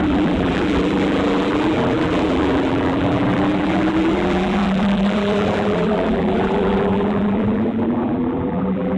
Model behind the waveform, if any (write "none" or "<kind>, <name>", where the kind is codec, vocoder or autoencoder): vocoder, BigVGAN v2